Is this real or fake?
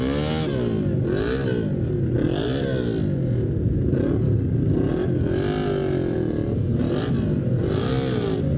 real